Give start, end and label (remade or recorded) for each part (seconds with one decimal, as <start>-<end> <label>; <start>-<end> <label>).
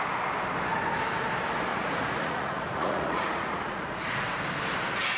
0.0-1.7 recorded; 1.7-4.4 remade; 4.4-5.2 recorded